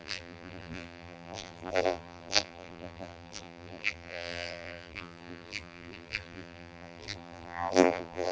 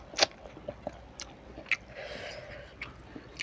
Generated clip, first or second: first